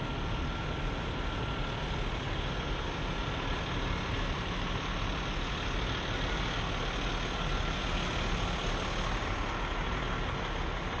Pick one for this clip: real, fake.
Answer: real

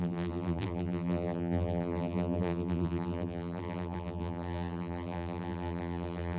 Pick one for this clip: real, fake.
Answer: fake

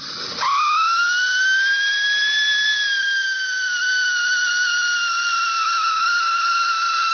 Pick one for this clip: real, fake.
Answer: real